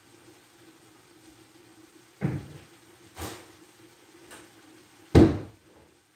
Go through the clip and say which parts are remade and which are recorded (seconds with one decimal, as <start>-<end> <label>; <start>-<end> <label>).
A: 0.0-1.7 recorded; 1.7-4.4 remade; 4.4-6.2 recorded